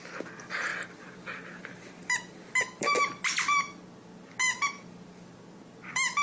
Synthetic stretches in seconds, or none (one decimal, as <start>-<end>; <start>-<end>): 0.7-3.8; 4.4-5.4